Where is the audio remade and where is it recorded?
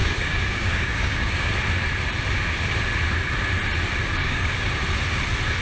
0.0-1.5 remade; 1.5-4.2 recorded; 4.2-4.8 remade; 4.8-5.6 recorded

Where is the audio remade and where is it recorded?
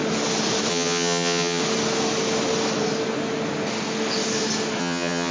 0.0-0.7 recorded; 0.7-1.6 remade; 1.6-4.8 recorded; 4.8-5.3 remade